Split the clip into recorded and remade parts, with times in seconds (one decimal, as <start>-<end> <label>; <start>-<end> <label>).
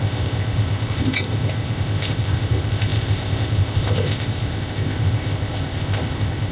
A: 0.0-6.5 remade